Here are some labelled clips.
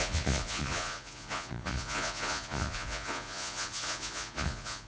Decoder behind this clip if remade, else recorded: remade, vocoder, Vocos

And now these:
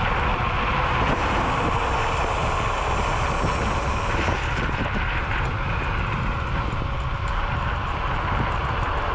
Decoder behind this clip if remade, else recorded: recorded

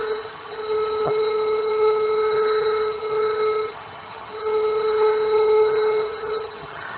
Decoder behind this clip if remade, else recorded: remade, vocoder, HiFi-GAN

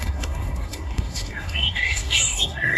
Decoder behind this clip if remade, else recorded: remade, codec, SNAC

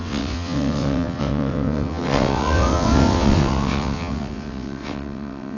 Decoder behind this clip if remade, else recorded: remade, vocoder, WaveNeXt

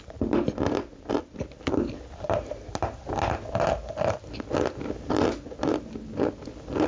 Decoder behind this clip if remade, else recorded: recorded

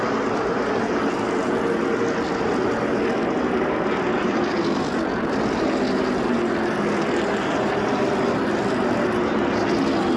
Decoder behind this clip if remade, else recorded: recorded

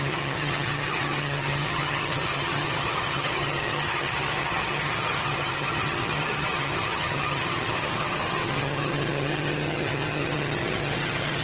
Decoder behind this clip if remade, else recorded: remade, vocoder, HiFi-GAN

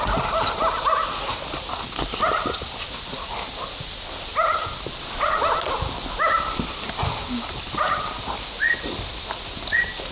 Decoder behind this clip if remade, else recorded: recorded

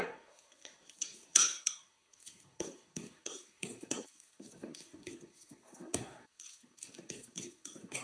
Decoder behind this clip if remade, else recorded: remade, codec, SNAC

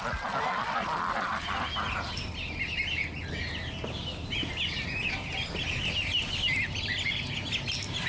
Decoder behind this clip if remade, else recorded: recorded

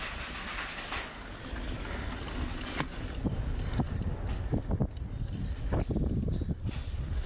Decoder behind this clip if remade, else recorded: recorded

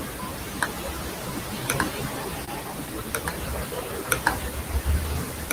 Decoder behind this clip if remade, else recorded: remade, vocoder, BigVGAN v2